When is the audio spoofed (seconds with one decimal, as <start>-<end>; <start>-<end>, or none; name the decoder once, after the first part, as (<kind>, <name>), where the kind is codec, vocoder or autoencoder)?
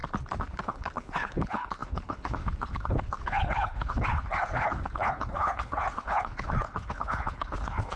0.5-8.0 (codec, HILCodec)